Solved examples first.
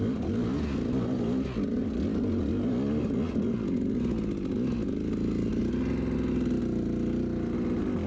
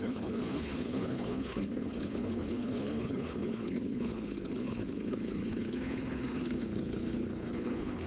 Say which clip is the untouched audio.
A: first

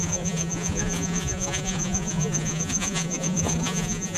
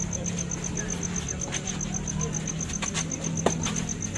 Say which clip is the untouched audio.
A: second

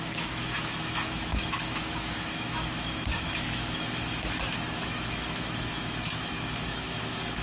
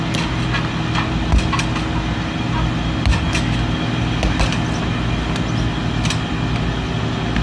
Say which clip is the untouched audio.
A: second